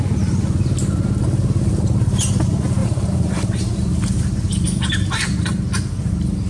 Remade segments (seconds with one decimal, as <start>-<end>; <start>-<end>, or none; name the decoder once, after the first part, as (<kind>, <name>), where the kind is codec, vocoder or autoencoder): 2.8-4.2 (vocoder, BigVGAN v2)